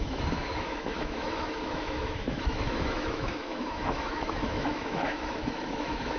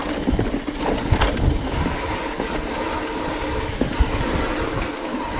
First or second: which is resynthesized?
first